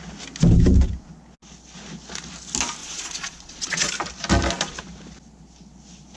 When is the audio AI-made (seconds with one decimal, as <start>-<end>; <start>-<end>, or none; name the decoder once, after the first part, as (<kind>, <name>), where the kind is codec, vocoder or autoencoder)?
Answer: 2.8-3.9 (vocoder, Vocos)